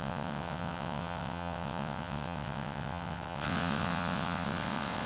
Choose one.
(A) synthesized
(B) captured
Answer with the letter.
A